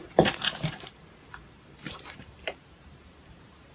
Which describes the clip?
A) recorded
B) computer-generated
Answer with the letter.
B